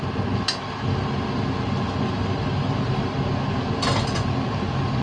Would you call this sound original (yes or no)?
yes